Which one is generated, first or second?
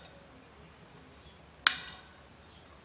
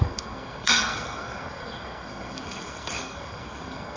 second